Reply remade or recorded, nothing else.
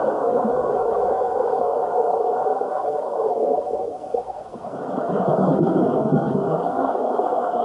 remade